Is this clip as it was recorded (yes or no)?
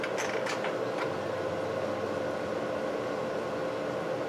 yes